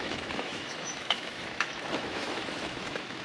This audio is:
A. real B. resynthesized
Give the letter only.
B